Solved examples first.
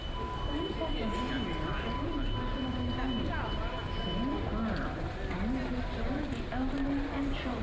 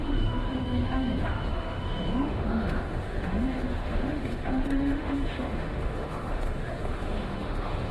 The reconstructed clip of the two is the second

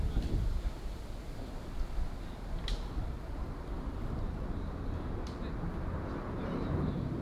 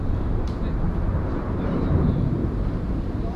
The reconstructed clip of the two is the second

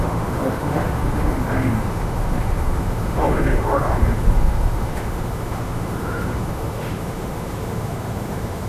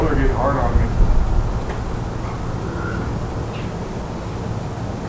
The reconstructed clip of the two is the first